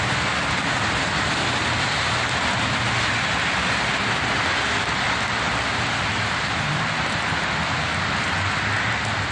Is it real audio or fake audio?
real